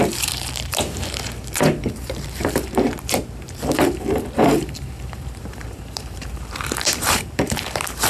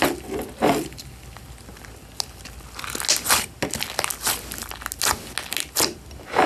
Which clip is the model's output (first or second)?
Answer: first